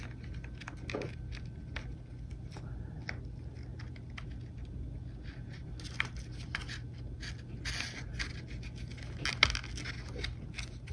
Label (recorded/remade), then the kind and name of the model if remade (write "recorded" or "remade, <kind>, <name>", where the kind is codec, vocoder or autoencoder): recorded